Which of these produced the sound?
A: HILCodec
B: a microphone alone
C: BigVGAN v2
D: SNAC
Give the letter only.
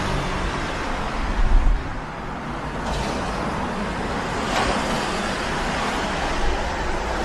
B